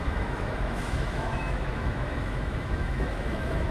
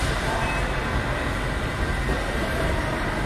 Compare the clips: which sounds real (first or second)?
second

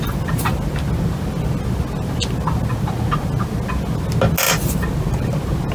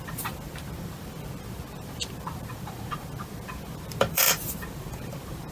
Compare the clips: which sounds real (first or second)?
first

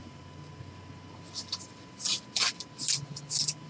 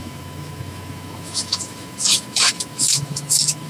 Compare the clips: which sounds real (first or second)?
first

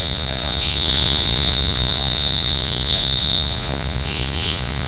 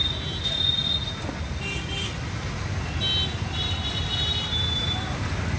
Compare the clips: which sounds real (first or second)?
second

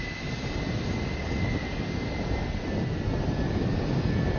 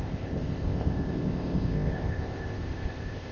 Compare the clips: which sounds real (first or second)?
first